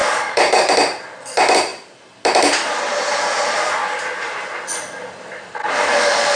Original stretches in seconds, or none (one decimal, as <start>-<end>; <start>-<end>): 0.7-5.6